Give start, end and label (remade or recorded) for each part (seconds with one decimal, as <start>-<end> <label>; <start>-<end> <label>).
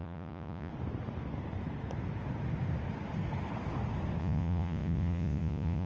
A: 0.0-0.7 remade; 0.7-4.2 recorded; 4.2-5.9 remade